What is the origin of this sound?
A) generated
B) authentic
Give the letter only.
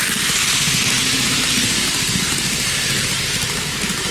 B